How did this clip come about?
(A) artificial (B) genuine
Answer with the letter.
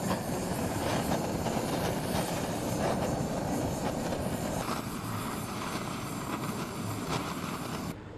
A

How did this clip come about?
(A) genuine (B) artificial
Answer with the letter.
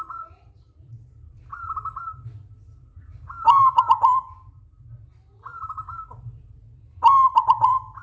B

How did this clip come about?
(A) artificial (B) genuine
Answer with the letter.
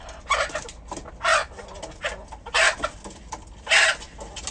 B